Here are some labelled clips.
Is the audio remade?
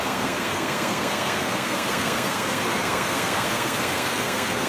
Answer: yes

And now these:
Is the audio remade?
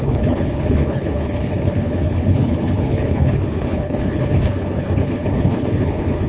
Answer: yes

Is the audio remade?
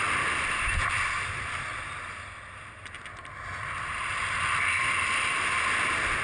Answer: no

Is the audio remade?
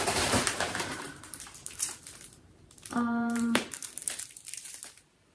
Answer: yes